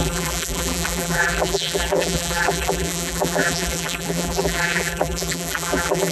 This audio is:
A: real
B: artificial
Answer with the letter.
B